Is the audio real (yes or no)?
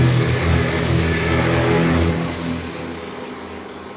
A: no